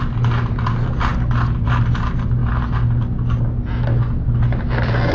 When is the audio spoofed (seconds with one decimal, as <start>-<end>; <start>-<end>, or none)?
none